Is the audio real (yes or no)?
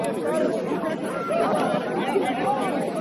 yes